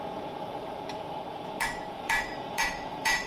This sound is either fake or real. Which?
fake